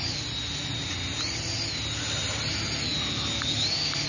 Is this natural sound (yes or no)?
yes